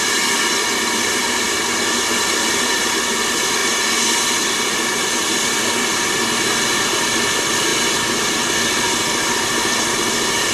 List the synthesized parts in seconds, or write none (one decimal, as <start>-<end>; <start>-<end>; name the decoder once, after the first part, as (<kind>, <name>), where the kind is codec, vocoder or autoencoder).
0.0-3.6 (vocoder, BigVGAN v2); 4.2-7.7; 8.3-10.5